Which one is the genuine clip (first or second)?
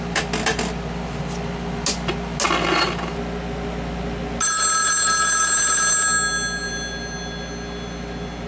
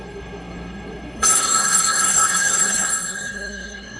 first